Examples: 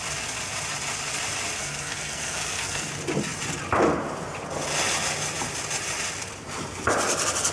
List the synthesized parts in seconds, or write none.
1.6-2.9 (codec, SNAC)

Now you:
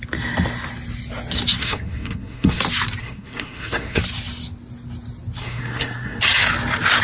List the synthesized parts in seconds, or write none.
1.6-2.6 (codec, SNAC); 3.0-4.0; 5.4-6.2

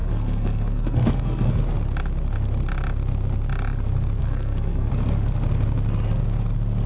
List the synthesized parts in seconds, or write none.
0.0-1.6 (codec, SNAC); 4.2-4.9

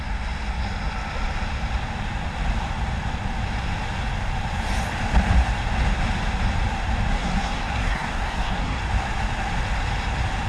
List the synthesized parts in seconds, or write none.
7.1-8.8 (codec, SNAC)

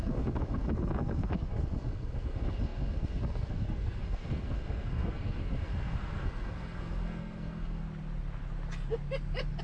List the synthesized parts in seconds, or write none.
0.0-7.8 (codec, SNAC)

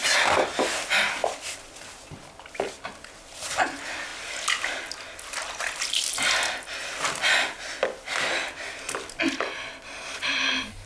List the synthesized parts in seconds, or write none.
none

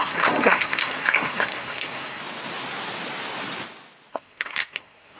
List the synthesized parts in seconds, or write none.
0.0-2.2 (codec, SNAC); 4.1-5.2